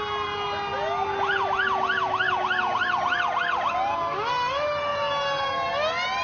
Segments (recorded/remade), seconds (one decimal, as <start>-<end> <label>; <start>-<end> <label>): 0.0-6.2 recorded